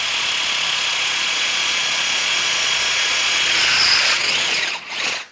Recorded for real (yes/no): no